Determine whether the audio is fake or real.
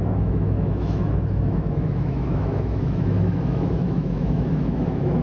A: fake